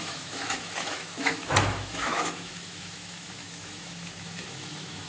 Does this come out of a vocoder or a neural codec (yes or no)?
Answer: yes